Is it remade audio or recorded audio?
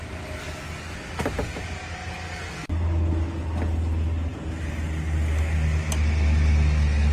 recorded